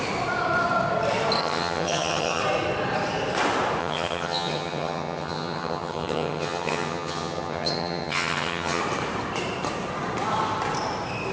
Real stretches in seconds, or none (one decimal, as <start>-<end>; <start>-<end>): 0.0-1.4; 2.4-3.8; 8.8-11.3